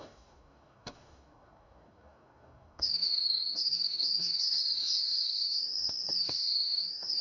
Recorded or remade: remade